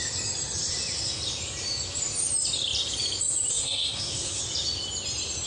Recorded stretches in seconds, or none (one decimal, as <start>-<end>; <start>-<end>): 0.0-3.5; 4.4-5.5